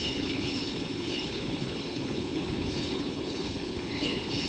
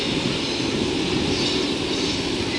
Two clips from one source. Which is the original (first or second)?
second